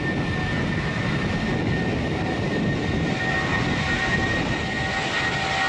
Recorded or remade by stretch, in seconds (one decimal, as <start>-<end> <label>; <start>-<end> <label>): 0.0-5.7 recorded